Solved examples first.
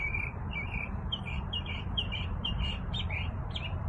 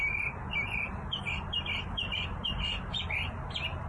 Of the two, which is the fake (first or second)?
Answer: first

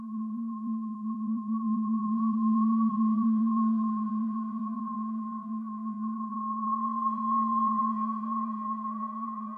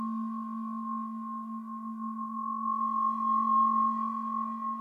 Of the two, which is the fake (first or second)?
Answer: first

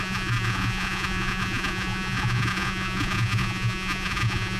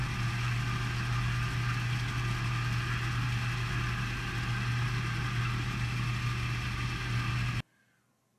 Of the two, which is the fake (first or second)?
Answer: first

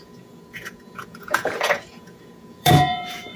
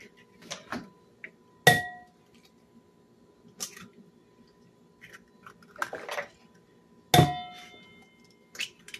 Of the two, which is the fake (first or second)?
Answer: first